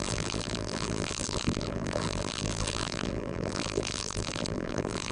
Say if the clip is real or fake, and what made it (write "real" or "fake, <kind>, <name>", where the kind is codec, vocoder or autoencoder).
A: fake, vocoder, BigVGAN v2